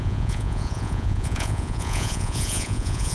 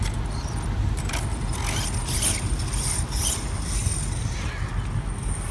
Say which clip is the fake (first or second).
first